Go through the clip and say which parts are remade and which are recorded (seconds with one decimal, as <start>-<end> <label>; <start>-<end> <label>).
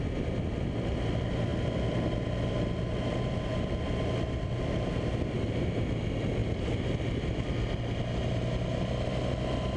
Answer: 0.0-9.8 recorded